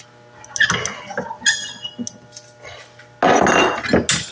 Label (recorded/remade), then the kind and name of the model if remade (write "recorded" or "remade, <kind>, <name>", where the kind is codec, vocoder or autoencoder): recorded